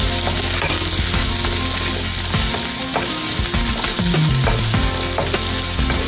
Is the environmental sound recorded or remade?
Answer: recorded